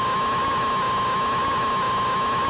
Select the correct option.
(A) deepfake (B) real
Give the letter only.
B